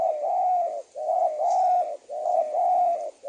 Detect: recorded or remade recorded